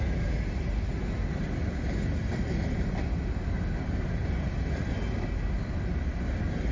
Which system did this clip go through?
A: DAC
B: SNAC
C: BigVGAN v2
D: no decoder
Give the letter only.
D